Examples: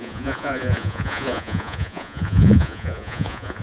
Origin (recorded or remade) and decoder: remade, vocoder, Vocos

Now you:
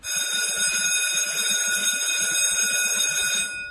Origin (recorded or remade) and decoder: recorded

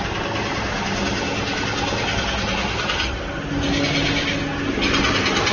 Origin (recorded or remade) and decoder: recorded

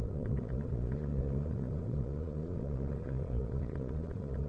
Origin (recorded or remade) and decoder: remade, vocoder, Vocos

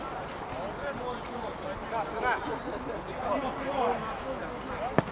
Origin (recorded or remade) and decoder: recorded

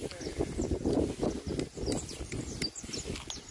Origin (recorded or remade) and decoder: recorded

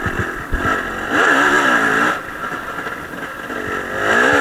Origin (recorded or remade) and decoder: recorded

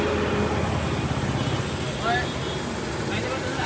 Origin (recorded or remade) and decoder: recorded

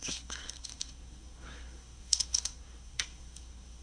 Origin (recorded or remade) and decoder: remade, codec, SNAC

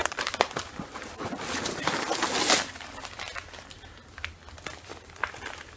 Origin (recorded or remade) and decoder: recorded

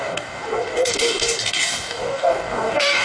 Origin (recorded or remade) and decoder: remade, codec, DAC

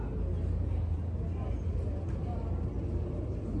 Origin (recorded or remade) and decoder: recorded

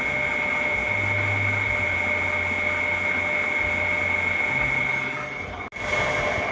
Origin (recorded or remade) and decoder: recorded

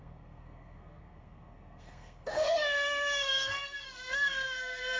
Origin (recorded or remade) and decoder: remade, codec, SNAC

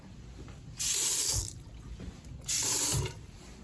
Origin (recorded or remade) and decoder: recorded